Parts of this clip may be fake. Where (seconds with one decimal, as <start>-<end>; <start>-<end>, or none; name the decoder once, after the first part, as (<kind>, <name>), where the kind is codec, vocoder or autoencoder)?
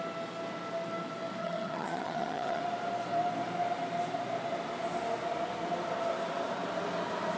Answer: 1.4-2.6 (vocoder, HiFi-GAN)